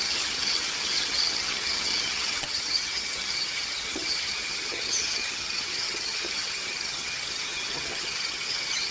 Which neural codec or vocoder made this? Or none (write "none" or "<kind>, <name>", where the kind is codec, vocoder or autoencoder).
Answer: vocoder, HiFi-GAN